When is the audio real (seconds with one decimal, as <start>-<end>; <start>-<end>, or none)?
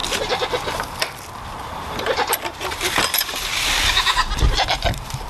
0.0-1.6; 3.5-4.7